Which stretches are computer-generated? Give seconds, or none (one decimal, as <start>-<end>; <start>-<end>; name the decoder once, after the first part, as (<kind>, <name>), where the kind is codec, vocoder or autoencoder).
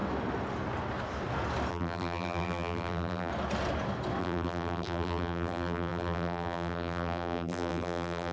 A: 1.7-3.3 (vocoder, BigVGAN v2); 4.2-8.3